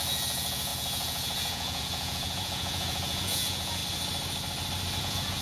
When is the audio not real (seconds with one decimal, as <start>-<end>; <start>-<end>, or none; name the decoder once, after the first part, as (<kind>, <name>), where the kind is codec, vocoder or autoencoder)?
0.0-3.8 (vocoder, Vocos); 5.0-5.4